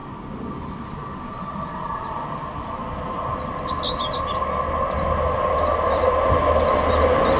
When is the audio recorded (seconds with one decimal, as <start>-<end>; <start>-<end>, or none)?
0.0-7.4